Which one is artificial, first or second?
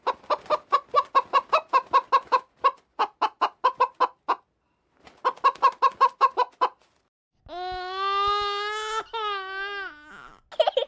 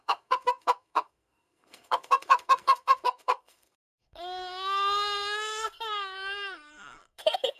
second